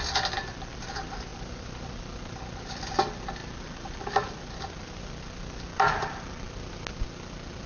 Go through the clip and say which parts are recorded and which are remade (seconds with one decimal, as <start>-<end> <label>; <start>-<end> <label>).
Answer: 0.0-3.4 recorded; 3.4-4.4 remade; 4.4-5.7 recorded; 5.7-6.5 remade; 6.5-7.7 recorded